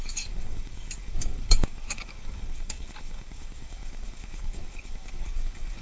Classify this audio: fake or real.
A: fake